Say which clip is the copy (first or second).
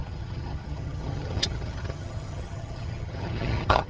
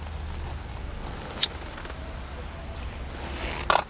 first